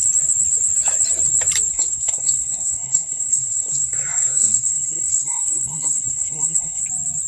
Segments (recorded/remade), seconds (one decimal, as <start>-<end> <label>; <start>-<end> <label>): 0.0-1.7 recorded; 1.7-6.8 remade; 6.8-7.3 recorded